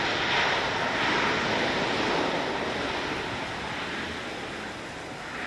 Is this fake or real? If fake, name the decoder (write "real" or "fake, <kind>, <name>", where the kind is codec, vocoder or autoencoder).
real